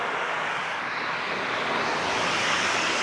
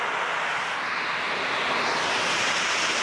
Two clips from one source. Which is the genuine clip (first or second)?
second